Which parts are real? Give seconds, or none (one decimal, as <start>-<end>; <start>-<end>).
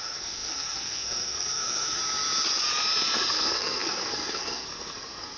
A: 2.0-3.3